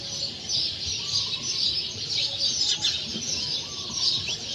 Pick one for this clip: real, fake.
real